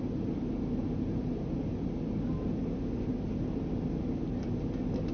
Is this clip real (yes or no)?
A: yes